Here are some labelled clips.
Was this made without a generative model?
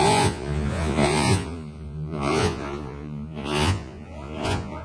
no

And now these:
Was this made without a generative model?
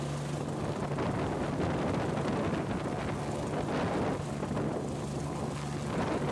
yes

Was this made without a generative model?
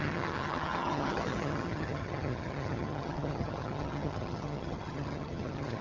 no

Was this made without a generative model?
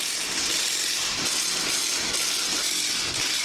yes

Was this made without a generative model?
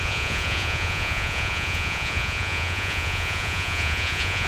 no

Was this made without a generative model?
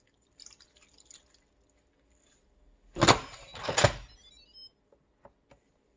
yes